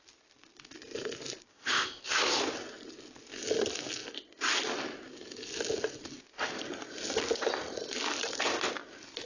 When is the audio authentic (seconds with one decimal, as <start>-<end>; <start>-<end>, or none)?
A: 0.0-1.5; 2.4-9.3